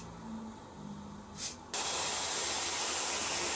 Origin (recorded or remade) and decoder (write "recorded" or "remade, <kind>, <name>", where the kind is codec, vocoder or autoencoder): recorded